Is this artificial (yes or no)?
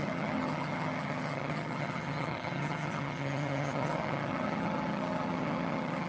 yes